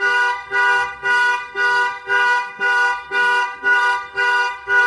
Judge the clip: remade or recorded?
remade